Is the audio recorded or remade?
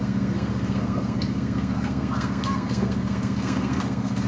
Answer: remade